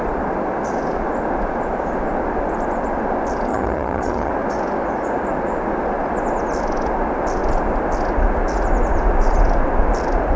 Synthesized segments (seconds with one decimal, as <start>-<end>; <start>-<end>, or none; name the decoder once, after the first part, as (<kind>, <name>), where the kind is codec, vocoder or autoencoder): 3.5-4.3 (vocoder, HiFi-GAN)